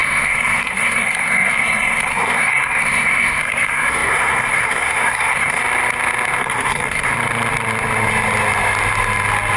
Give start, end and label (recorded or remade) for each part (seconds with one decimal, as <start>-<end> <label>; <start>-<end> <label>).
0.0-5.6 remade; 5.6-6.4 recorded; 6.4-7.1 remade; 7.1-9.6 recorded

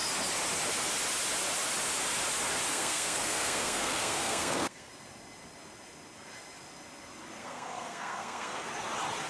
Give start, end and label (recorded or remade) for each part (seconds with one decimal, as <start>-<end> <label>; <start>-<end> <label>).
0.0-2.7 recorded; 2.7-4.9 remade; 4.9-7.4 recorded; 7.4-8.7 remade; 8.7-9.3 recorded

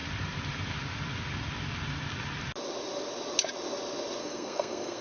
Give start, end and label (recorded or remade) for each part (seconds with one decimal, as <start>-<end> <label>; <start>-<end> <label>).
0.0-4.2 recorded; 4.2-5.0 remade

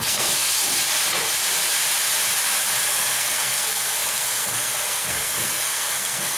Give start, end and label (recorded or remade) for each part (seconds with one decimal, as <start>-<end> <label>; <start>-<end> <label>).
0.0-0.5 remade; 0.5-2.8 recorded; 2.8-6.4 remade